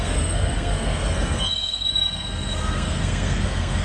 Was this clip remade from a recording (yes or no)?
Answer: yes